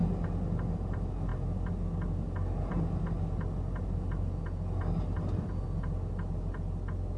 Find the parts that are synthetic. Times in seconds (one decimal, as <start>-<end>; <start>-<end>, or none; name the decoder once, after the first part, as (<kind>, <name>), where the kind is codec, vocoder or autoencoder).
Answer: none